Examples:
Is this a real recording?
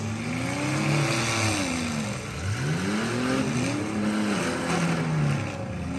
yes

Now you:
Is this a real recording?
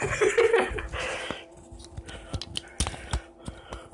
yes